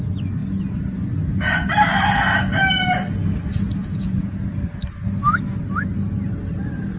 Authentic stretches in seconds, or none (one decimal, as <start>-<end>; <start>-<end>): 0.0-3.8; 4.3-7.0